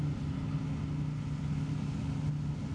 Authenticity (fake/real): real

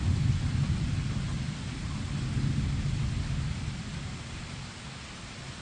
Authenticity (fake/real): real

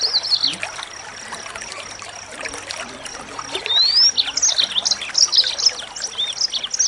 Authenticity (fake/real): real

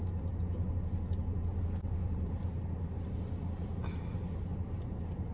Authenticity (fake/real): real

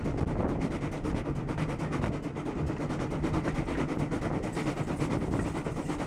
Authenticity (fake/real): real